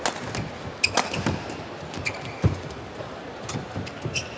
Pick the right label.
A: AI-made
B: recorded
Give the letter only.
B